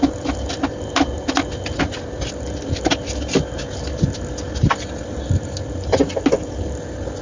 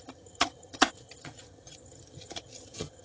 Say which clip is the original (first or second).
first